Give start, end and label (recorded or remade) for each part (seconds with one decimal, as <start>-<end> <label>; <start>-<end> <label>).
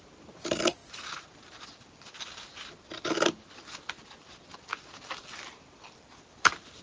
0.0-6.8 recorded